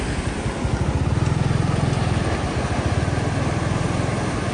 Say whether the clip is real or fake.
real